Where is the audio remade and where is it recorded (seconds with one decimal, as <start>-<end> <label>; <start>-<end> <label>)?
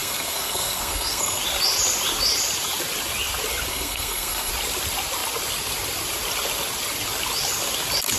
0.0-1.4 remade; 1.4-3.7 recorded; 3.7-4.5 remade; 4.5-8.2 recorded